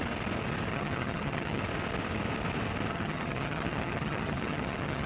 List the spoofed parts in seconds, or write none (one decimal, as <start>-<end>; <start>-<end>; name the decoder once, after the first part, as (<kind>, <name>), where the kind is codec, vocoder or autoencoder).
0.7-1.6 (vocoder, HiFi-GAN); 2.9-5.1

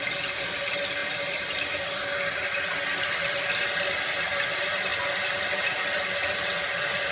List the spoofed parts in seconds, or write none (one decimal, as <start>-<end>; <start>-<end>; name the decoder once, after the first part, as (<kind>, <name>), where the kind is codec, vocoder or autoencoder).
none

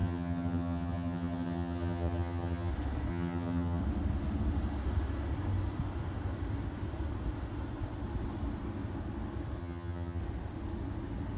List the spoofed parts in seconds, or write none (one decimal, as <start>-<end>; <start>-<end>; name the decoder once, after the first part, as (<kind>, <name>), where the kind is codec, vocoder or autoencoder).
0.0-2.7 (vocoder, HiFi-GAN); 3.1-3.8; 9.6-10.2

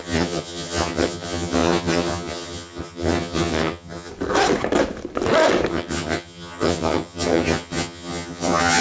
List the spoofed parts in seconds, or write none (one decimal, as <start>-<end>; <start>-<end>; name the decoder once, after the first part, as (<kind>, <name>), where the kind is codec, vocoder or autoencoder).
0.0-4.1 (vocoder, HiFi-GAN); 5.7-8.8

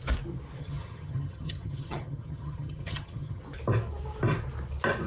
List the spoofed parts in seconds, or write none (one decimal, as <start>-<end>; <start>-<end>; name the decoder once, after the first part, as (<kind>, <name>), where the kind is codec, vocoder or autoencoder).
0.6-3.4 (vocoder, HiFi-GAN)